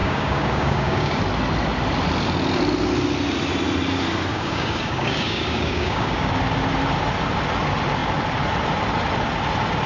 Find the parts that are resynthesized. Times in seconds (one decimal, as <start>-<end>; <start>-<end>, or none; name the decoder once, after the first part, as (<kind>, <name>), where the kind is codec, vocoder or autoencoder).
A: 0.0-1.2 (codec, DAC); 4.3-6.3